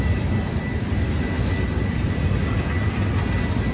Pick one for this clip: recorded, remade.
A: recorded